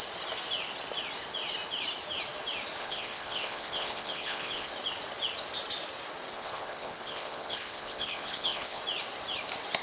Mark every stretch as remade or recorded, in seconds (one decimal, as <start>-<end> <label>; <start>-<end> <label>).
0.0-2.8 recorded; 2.8-4.7 remade; 4.7-6.3 recorded; 6.3-8.8 remade; 8.8-9.8 recorded